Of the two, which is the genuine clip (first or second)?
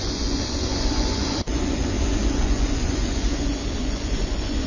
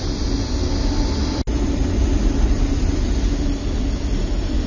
second